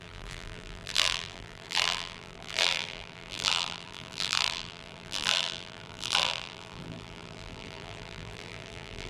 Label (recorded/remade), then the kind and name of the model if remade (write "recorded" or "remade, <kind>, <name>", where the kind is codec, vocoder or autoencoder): remade, vocoder, BigVGAN v2